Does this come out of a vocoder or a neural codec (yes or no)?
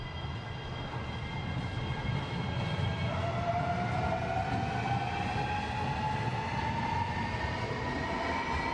no